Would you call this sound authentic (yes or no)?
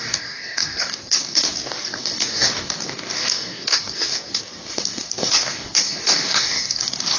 no